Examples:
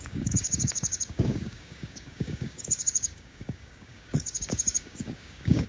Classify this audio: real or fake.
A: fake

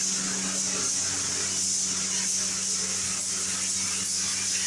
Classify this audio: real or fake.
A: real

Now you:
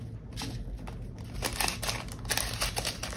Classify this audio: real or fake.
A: real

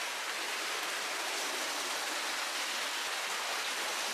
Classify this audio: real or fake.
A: real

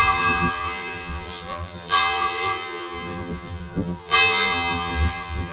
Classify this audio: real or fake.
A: fake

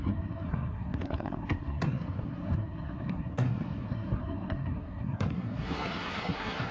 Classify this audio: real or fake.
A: fake